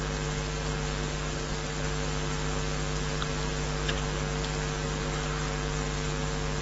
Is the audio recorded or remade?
recorded